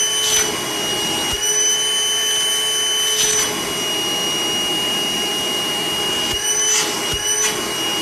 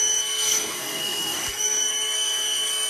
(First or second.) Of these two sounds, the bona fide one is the first